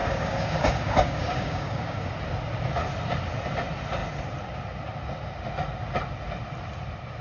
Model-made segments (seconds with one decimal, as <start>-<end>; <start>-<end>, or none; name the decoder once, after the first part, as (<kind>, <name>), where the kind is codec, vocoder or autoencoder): 0.0-2.1 (codec, DAC)

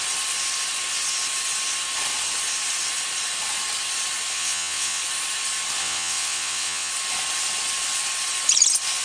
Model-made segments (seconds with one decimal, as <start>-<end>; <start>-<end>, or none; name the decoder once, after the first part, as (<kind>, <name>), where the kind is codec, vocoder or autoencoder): 4.3-5.0 (vocoder, WaveNeXt); 5.8-6.9

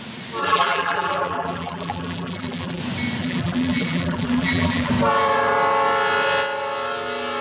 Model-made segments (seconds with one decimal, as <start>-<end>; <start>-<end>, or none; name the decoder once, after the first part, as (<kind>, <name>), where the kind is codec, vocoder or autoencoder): 0.4-2.8 (vocoder, BigVGAN v2); 3.2-4.9

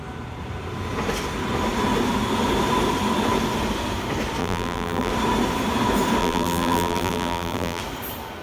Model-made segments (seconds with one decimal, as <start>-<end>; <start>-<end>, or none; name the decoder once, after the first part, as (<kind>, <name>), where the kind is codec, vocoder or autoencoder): 4.4-5.1 (vocoder, BigVGAN v2); 6.2-7.8

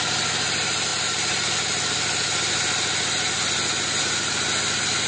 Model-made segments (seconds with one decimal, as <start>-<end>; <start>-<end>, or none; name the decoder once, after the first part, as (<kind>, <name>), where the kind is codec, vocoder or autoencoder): none

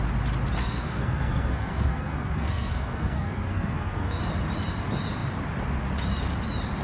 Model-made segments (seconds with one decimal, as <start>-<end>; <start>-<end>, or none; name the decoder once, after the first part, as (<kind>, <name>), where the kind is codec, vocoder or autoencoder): 0.6-4.2 (codec, SNAC)

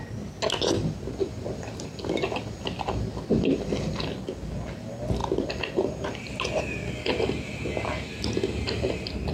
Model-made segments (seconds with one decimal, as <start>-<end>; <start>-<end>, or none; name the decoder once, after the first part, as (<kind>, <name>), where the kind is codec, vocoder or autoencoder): none